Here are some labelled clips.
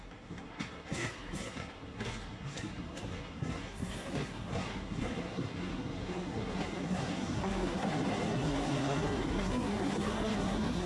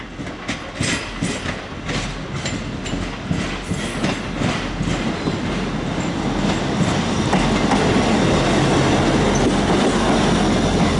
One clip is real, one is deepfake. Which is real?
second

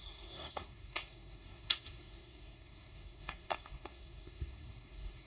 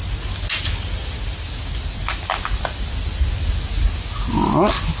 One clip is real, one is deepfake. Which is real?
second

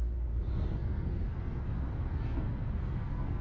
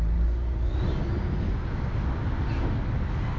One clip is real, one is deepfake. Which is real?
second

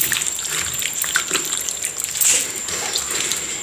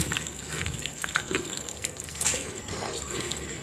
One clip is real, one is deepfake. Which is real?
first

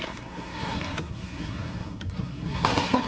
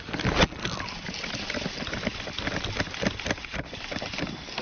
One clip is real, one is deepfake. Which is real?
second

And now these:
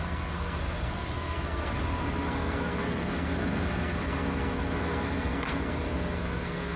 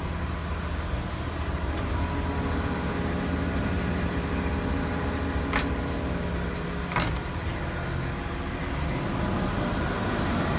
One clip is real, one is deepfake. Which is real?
second